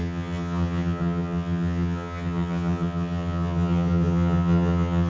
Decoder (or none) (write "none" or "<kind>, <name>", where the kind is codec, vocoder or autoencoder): vocoder, HiFi-GAN